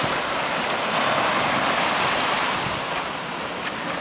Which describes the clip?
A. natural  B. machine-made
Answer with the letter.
A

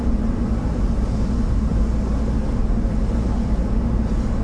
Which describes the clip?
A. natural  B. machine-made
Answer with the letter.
A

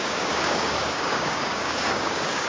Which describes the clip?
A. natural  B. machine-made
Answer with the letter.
B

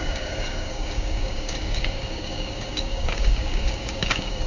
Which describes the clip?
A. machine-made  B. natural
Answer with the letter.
A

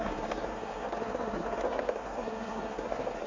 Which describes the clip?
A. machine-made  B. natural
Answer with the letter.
A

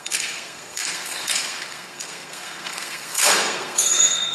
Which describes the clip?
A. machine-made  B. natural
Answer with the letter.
A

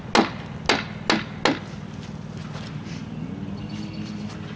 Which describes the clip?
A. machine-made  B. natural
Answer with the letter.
B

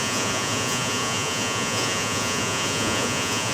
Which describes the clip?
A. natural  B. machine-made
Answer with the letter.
B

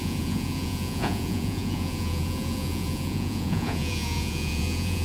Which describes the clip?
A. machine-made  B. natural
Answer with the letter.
A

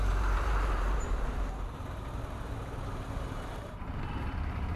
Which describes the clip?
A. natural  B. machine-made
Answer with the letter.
B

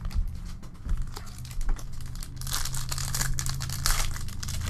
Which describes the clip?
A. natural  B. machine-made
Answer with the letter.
A